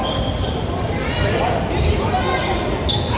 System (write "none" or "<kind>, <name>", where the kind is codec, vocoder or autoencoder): none